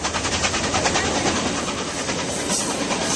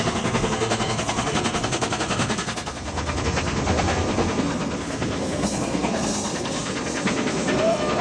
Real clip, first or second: first